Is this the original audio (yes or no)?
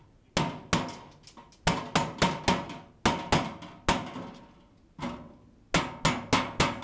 yes